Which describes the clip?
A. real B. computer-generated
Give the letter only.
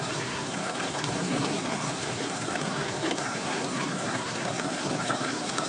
B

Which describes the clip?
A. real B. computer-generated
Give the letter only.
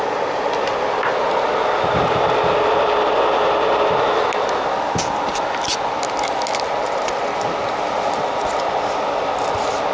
A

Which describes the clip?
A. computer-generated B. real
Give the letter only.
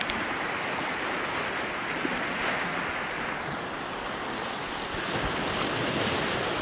B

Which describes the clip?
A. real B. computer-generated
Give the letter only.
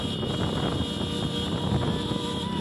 A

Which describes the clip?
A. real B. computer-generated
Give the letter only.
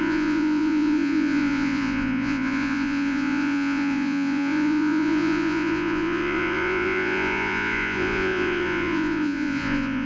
B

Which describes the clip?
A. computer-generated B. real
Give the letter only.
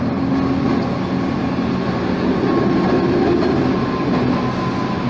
B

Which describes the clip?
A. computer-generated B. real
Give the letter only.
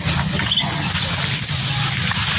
B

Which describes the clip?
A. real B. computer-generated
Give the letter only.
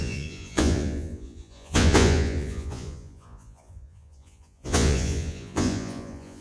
B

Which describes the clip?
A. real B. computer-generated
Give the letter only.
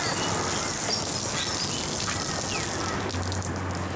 A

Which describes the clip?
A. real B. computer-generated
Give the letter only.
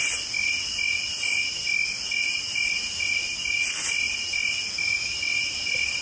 A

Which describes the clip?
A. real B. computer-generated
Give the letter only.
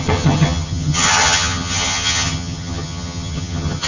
B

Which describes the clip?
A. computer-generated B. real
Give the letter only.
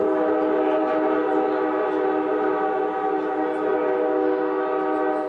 B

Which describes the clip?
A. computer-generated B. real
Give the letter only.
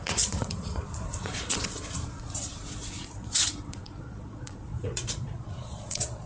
A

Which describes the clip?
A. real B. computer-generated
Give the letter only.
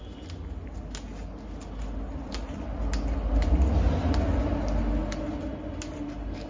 A